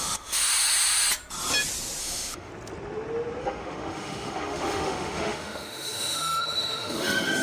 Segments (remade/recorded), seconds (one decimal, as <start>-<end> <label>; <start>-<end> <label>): 0.0-0.5 remade; 0.5-2.0 recorded; 2.0-2.5 remade; 2.5-3.4 recorded; 3.4-7.4 remade